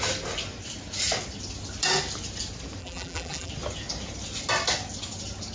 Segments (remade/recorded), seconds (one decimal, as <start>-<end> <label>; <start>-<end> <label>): 0.0-2.8 recorded; 2.8-3.5 remade; 3.5-5.5 recorded